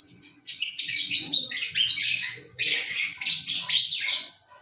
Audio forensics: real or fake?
fake